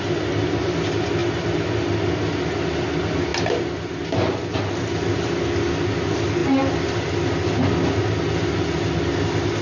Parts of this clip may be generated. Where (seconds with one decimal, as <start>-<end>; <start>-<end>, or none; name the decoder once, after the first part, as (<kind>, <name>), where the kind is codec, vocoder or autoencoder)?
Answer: none